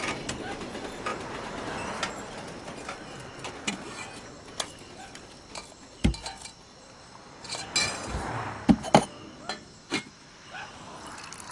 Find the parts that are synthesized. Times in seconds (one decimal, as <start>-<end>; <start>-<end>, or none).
none